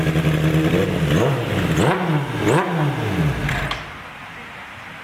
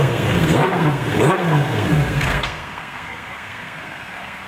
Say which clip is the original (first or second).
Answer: first